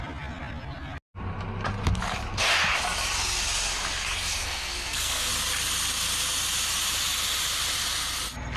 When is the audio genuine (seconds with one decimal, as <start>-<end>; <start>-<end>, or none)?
0.0-4.4; 5.3-8.6